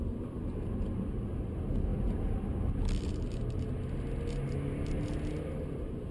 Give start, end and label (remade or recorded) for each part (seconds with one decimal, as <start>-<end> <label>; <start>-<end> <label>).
0.0-6.1 recorded